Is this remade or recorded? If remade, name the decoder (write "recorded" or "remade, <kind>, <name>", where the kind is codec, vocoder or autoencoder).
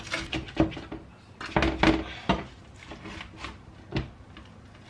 recorded